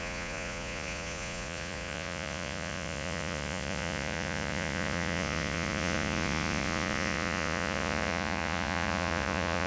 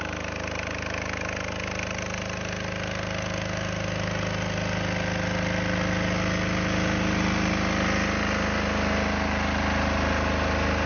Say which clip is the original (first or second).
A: second